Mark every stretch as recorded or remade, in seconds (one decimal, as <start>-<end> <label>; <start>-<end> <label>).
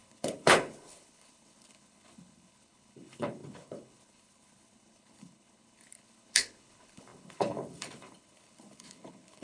0.0-9.4 remade